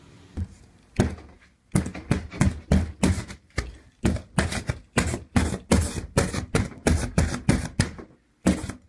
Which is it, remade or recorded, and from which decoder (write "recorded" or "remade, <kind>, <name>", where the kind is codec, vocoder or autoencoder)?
recorded